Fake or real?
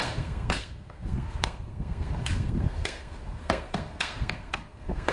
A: fake